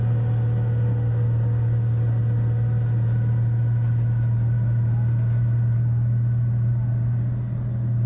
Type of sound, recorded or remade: recorded